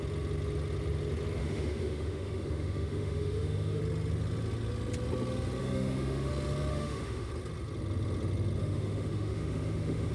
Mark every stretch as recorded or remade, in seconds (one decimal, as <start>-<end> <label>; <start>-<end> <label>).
0.0-1.4 recorded; 1.4-3.8 remade; 3.8-5.6 recorded; 5.6-6.3 remade; 6.3-6.7 recorded; 6.7-7.3 remade; 7.3-8.6 recorded; 8.6-10.1 remade